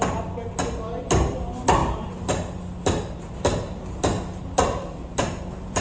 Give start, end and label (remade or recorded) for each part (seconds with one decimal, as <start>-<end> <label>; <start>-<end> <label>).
0.0-5.8 recorded